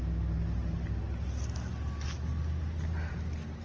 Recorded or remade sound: recorded